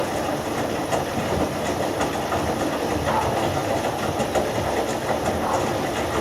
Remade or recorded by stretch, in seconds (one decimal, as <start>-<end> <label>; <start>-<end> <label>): 0.0-2.1 remade; 2.1-3.6 recorded; 3.6-4.2 remade; 4.2-6.2 recorded